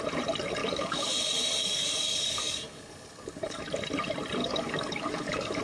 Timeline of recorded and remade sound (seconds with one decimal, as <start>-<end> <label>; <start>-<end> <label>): 0.0-0.6 recorded; 0.6-1.1 remade; 1.1-1.6 recorded; 1.6-3.6 remade; 3.6-4.4 recorded; 4.4-5.6 remade